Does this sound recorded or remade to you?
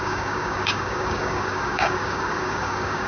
remade